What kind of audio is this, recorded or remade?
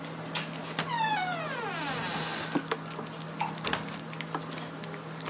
recorded